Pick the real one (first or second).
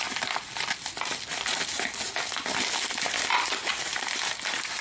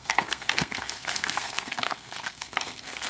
first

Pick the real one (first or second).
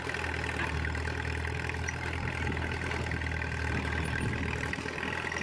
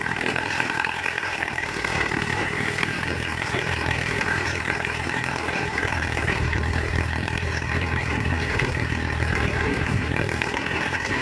first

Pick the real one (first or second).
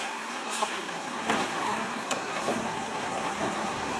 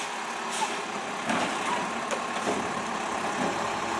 second